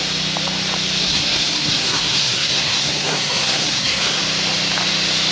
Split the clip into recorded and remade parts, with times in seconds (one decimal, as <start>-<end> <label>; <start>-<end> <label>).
0.0-1.0 recorded; 1.0-4.2 remade; 4.2-5.3 recorded